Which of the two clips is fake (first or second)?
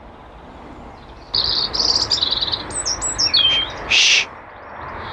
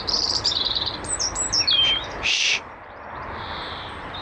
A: second